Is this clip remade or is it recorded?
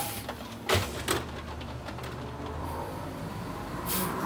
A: remade